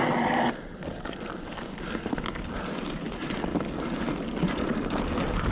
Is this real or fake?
real